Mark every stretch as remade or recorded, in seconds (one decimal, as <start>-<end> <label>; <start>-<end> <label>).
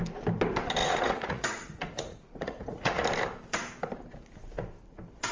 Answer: 0.0-0.8 recorded; 0.8-3.0 remade; 3.0-5.3 recorded